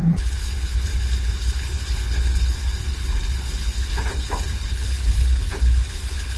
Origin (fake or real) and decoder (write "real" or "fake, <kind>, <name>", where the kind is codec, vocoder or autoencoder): fake, codec, HILCodec